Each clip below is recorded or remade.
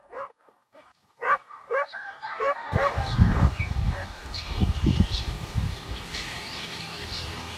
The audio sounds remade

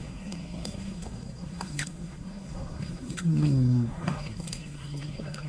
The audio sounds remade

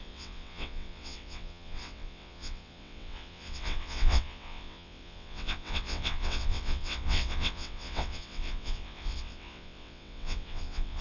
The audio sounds remade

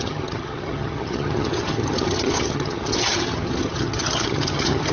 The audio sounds remade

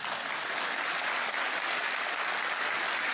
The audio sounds recorded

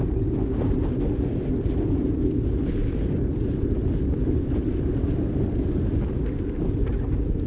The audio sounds recorded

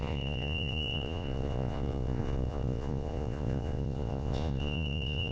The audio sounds remade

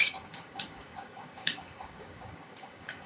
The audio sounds remade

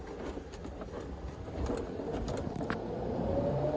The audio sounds recorded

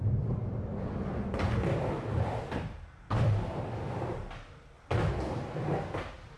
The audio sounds recorded